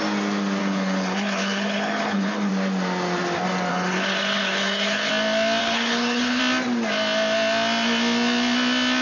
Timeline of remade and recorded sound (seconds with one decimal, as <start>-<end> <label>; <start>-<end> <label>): 0.0-0.6 recorded; 0.6-2.5 remade; 2.5-3.7 recorded; 3.7-5.1 remade; 5.1-5.6 recorded; 5.6-6.4 remade; 6.4-9.0 recorded